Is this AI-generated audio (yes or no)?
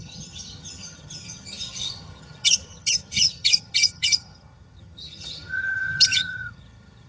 yes